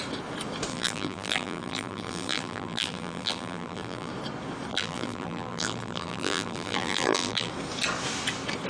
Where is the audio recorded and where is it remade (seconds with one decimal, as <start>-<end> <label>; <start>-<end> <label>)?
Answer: 0.0-0.7 recorded; 0.7-4.1 remade; 4.1-4.7 recorded; 4.7-7.5 remade; 7.5-8.7 recorded